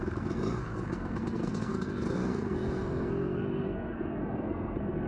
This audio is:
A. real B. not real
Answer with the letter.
B